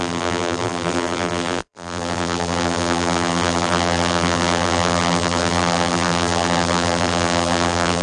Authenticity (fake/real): fake